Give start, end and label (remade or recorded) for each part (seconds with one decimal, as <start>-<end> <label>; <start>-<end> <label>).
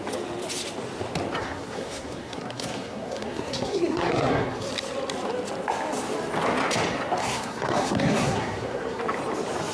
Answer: 0.0-1.4 recorded; 1.4-4.7 remade; 4.7-7.2 recorded; 7.2-9.0 remade; 9.0-9.7 recorded